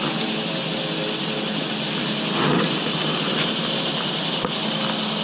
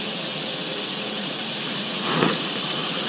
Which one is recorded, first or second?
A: first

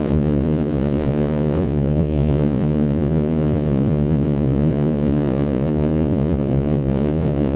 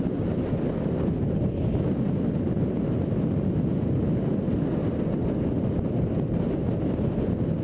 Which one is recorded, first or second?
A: second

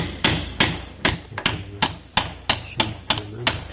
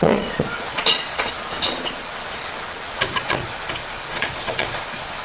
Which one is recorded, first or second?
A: first